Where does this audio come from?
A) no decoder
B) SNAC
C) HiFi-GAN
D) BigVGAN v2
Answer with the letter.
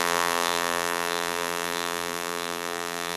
D